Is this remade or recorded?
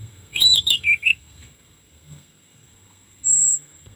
remade